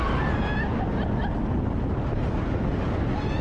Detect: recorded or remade recorded